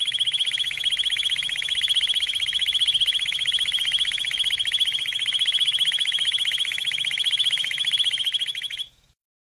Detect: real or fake fake